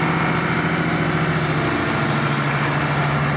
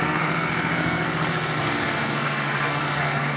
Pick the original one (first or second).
first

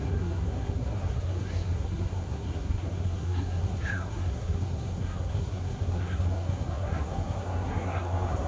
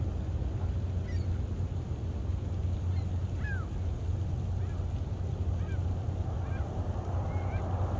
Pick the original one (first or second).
second